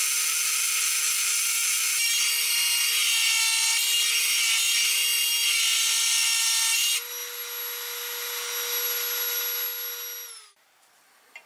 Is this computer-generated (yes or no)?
no